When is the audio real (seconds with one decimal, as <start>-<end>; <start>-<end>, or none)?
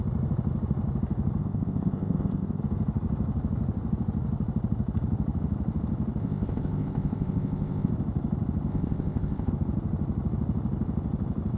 0.0-1.4; 2.6-6.2; 7.9-8.7; 9.5-11.6